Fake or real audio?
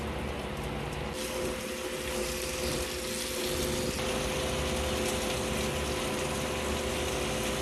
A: real